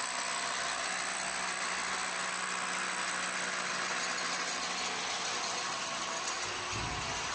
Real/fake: real